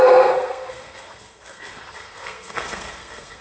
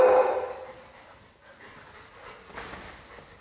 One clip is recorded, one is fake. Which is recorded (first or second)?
second